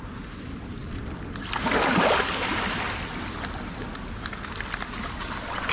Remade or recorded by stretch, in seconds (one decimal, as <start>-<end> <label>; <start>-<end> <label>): 0.0-5.7 recorded